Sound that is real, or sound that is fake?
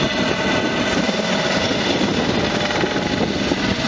real